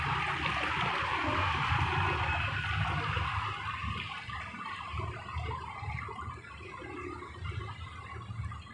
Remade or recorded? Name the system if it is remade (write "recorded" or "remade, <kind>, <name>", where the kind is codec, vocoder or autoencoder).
recorded